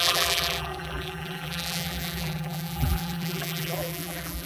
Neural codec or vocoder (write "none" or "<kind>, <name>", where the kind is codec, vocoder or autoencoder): vocoder, BigVGAN v2